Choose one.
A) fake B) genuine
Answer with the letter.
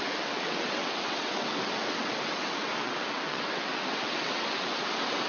A